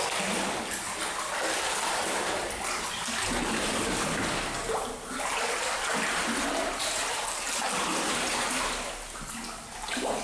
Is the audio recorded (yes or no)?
yes